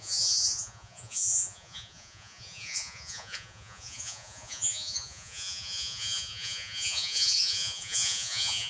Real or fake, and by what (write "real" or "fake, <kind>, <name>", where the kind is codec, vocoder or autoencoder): fake, vocoder, Vocos